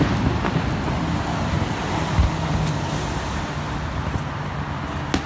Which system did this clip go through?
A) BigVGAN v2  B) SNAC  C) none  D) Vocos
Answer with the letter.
C